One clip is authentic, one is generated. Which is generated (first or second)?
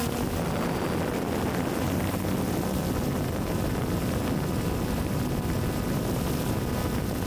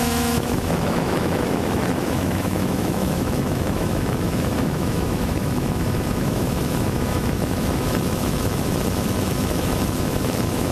second